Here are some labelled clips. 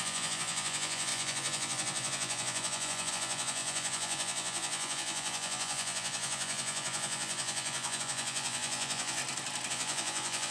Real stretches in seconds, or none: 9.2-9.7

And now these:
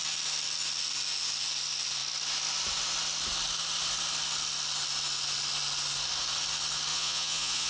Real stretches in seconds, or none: 0.0-6.9

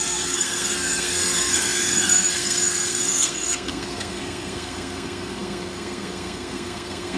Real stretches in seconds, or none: none

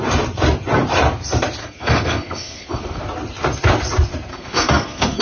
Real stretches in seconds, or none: 0.0-1.6; 3.0-4.3

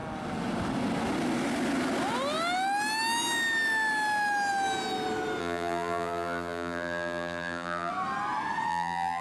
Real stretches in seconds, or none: 0.0-5.4; 7.9-8.7